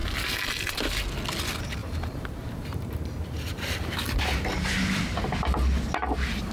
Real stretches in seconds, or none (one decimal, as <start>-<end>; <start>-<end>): 0.0-1.8; 5.1-6.5